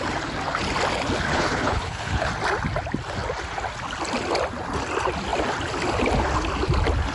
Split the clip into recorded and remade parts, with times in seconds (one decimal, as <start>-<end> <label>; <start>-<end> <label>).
0.0-1.3 recorded; 1.3-2.3 remade; 2.3-7.1 recorded